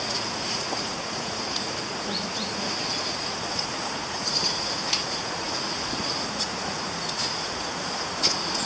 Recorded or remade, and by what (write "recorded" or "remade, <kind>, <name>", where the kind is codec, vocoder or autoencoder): remade, vocoder, Vocos